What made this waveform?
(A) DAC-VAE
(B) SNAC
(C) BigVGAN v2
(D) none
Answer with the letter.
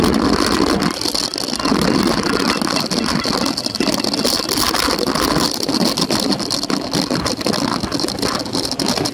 D